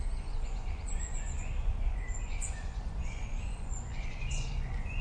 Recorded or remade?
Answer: remade